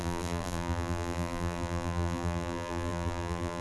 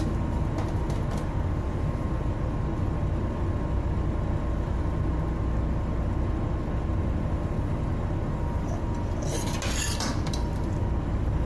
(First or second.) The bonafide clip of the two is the second